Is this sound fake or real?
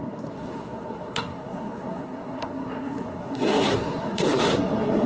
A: fake